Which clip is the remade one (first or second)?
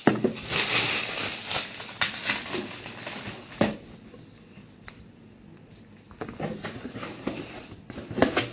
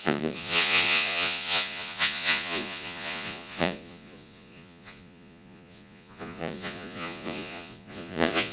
second